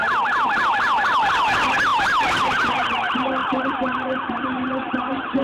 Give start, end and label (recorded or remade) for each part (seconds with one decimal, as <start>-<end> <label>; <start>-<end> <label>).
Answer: 0.0-1.9 recorded; 1.9-2.8 remade; 2.8-3.4 recorded; 3.4-4.1 remade; 4.1-5.4 recorded